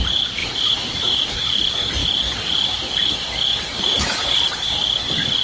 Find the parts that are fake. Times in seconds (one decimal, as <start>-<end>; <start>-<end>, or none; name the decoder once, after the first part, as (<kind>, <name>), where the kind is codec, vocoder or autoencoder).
0.4-1.4 (vocoder, Vocos)